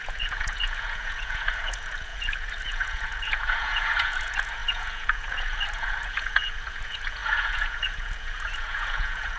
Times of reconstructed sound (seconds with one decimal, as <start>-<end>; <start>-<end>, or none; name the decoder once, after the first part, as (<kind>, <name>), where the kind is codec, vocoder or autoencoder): 0.0-9.4 (vocoder, Vocos)